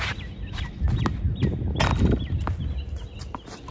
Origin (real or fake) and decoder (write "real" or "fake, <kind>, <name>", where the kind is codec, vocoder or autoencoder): real